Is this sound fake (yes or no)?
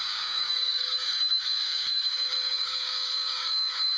yes